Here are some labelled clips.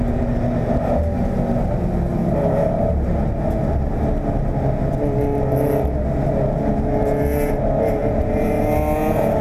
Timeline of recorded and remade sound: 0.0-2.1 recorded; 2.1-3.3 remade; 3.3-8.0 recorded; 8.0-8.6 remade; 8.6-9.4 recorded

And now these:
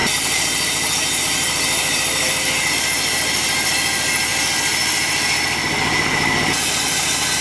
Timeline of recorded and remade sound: 0.0-2.7 remade; 2.7-4.3 recorded; 4.3-7.4 remade

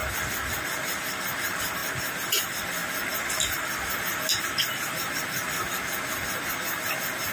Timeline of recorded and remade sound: 0.0-1.8 remade; 1.8-2.3 recorded; 2.3-2.8 remade; 2.8-5.1 recorded; 5.1-7.3 remade

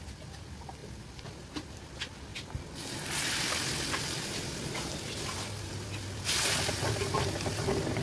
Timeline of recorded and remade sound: 0.0-0.8 recorded; 0.8-1.9 remade; 1.9-8.0 recorded

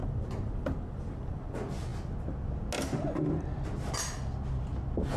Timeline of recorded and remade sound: 0.0-1.4 remade; 1.4-5.2 recorded

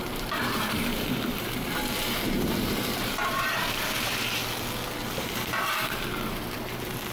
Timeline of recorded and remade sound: 0.0-4.4 remade; 4.4-5.1 recorded; 5.1-7.1 remade